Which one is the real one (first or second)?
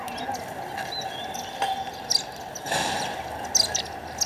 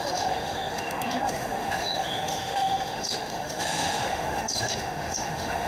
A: first